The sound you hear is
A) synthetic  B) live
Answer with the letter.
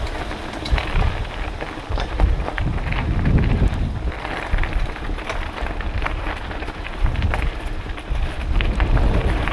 B